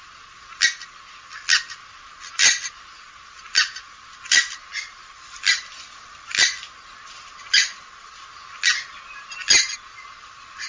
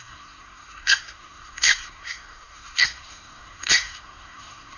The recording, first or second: first